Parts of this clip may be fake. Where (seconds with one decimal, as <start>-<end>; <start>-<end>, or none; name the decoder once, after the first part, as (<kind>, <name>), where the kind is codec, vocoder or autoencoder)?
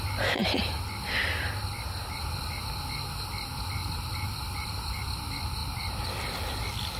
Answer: 3.8-4.7 (vocoder, BigVGAN v2); 5.6-6.1